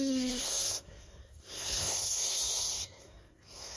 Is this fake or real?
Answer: fake